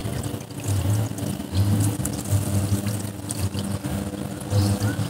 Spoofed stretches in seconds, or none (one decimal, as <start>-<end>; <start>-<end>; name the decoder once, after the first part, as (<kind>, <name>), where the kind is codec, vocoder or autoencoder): none